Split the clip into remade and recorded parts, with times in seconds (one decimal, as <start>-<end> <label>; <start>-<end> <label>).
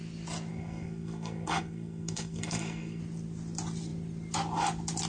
0.0-0.5 recorded; 0.5-3.0 remade; 3.0-5.1 recorded